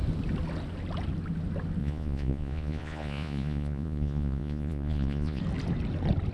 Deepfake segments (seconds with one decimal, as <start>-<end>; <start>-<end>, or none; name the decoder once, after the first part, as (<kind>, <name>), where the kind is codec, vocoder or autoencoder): 1.8-5.4 (vocoder, Vocos)